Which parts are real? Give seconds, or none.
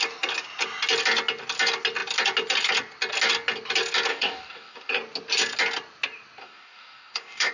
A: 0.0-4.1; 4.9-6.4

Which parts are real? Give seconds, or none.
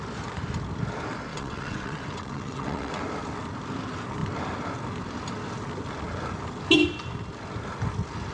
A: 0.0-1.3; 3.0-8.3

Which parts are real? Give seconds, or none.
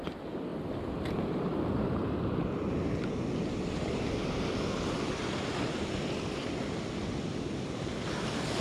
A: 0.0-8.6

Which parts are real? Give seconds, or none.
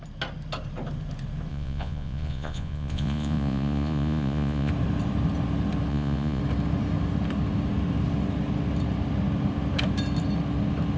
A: 0.0-1.5; 4.7-5.9; 6.4-11.0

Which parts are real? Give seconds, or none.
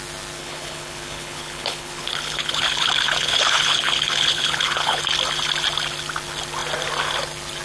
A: 0.0-0.4; 5.0-7.6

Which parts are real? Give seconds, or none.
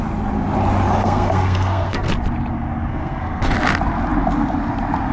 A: 0.0-1.0; 2.1-2.9; 3.5-5.1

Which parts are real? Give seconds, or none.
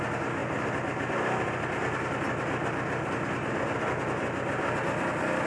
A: 0.0-5.5